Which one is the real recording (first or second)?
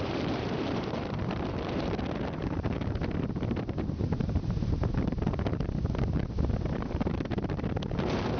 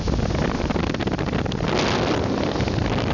second